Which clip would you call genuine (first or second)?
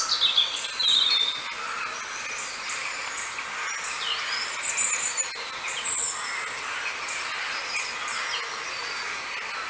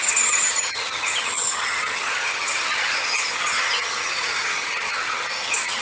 first